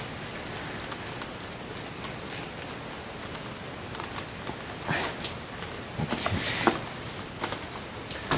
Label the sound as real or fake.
real